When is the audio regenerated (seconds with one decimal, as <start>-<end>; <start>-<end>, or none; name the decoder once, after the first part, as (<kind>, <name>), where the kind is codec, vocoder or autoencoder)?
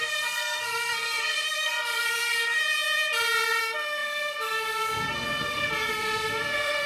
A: 0.0-2.6 (codec, SNAC); 3.6-6.9